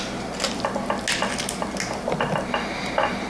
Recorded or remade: recorded